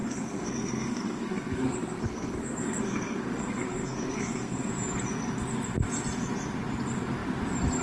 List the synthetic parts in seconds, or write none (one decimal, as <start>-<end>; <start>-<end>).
0.0-4.7